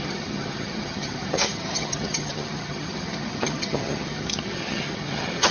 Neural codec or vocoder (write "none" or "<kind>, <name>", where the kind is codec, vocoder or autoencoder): vocoder, HiFi-GAN